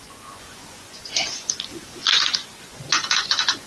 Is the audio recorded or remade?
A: remade